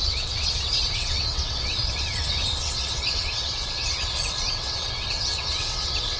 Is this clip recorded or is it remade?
remade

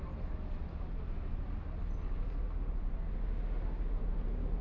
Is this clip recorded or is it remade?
recorded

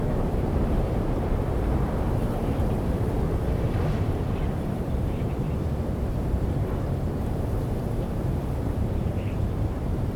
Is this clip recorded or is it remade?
remade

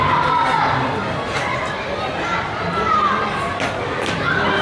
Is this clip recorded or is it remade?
remade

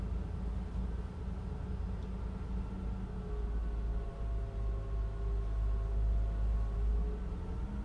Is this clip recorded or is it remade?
recorded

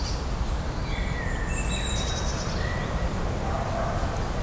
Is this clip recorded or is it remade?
recorded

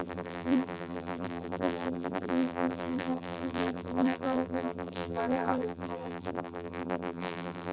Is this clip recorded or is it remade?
remade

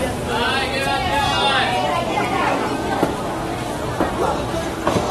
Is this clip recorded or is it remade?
recorded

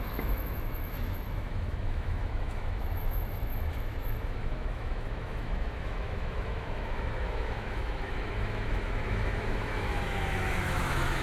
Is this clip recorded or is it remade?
remade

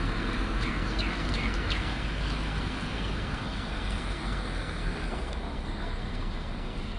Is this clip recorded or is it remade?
remade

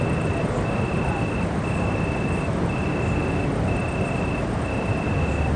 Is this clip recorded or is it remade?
recorded